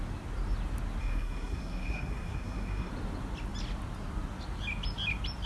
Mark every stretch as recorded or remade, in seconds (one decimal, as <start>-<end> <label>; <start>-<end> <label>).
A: 0.0-1.0 recorded; 1.0-2.9 remade; 2.9-5.5 recorded